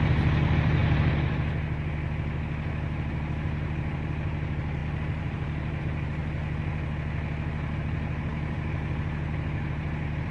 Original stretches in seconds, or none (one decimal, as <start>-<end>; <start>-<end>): 6.2-7.8